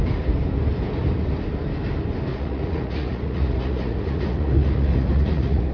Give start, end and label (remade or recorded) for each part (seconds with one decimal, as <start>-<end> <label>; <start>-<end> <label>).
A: 0.0-2.3 recorded; 2.3-5.7 remade